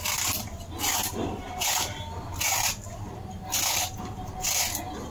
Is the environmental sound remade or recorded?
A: recorded